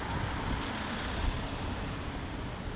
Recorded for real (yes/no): yes